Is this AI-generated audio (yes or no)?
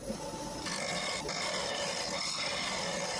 no